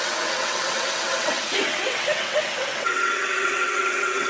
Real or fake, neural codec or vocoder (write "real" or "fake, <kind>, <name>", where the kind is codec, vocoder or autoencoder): fake, vocoder, WaveNeXt